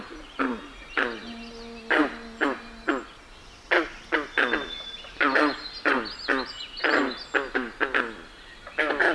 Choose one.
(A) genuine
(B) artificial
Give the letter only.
A